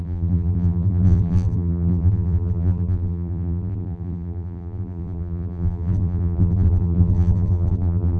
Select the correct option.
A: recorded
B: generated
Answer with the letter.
B